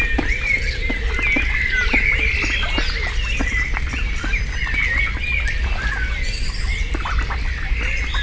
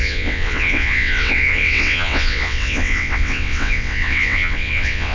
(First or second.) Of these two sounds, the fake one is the second